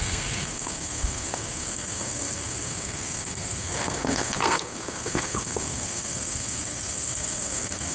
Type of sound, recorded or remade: remade